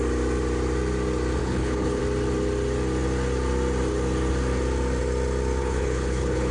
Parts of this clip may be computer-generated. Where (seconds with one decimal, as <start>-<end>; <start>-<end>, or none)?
1.4-2.0; 5.6-6.5